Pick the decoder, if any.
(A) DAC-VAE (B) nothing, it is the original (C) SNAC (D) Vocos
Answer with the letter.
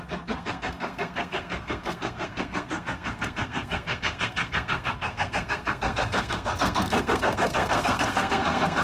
C